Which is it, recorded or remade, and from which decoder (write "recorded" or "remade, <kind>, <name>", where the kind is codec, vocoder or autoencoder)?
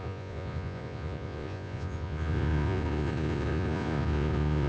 remade, vocoder, Vocos